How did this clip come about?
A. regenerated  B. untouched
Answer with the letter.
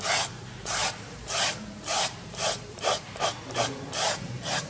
A